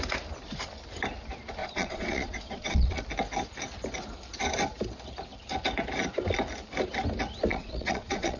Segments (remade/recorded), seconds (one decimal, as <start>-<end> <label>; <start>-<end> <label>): 0.0-1.6 recorded; 1.6-3.0 remade; 3.0-7.5 recorded; 7.5-8.4 remade